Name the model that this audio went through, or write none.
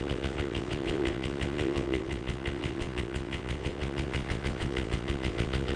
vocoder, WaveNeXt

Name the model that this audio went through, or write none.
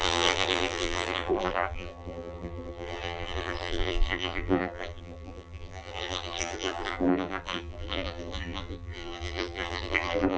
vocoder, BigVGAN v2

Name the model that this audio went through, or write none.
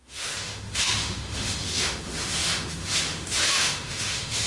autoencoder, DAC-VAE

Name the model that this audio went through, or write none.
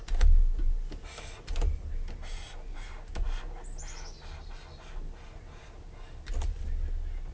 none